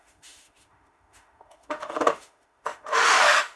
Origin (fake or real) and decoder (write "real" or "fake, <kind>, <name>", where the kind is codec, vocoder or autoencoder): fake, autoencoder, DAC-VAE